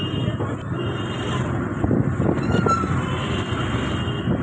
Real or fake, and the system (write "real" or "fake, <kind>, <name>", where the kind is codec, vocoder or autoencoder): real